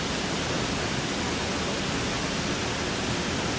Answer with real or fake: real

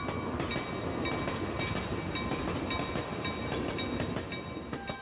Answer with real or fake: real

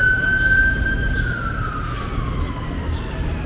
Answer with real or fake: real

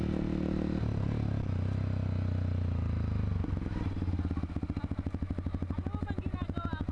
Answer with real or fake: real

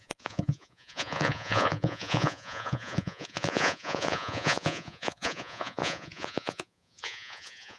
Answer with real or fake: fake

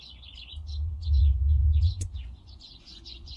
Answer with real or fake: fake